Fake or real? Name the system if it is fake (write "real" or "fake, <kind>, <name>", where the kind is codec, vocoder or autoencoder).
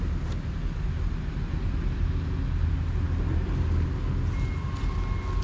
real